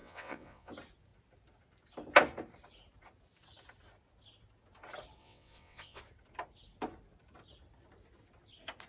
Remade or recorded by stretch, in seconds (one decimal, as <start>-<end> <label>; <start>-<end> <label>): 0.0-0.7 remade; 0.7-5.2 recorded; 5.2-6.0 remade; 6.0-8.9 recorded